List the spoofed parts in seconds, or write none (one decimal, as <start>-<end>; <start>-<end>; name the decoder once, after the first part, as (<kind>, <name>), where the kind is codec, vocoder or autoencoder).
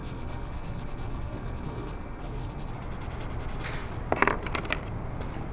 0.0-2.7 (codec, SNAC)